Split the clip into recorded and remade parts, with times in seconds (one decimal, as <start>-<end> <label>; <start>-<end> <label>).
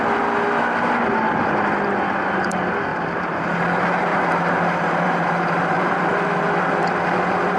0.0-2.9 recorded; 2.9-3.6 remade; 3.6-4.1 recorded; 4.1-5.8 remade; 5.8-7.6 recorded